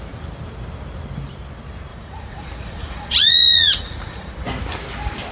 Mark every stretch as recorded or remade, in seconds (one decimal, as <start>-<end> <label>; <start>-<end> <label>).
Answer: 0.0-1.9 recorded; 1.9-4.3 remade; 4.3-5.3 recorded